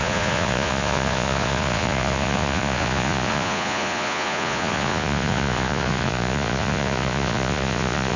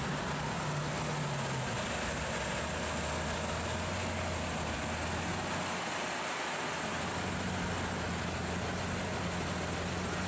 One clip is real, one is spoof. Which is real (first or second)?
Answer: second